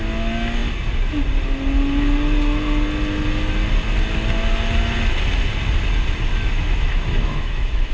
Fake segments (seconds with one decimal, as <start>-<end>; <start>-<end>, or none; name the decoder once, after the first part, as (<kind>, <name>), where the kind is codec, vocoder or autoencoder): 6.3-7.9 (autoencoder, DAC-VAE)